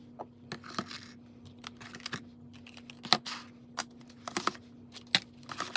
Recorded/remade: recorded